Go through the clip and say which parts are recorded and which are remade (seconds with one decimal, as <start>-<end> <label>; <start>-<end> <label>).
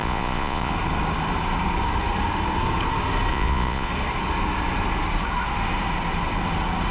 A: 0.0-0.7 remade; 0.7-3.3 recorded; 3.3-3.9 remade; 3.9-6.9 recorded